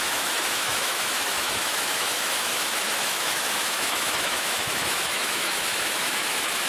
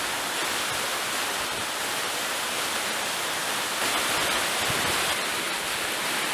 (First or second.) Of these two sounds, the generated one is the first